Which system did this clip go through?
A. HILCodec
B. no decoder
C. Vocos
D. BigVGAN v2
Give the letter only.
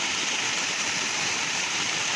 D